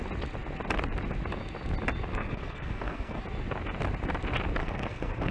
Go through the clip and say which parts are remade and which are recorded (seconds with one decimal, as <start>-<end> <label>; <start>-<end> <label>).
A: 0.0-2.1 recorded; 2.1-3.2 remade; 3.2-4.6 recorded; 4.6-5.3 remade